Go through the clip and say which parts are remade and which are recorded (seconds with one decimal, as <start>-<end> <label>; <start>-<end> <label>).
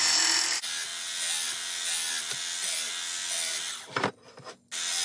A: 0.0-5.0 recorded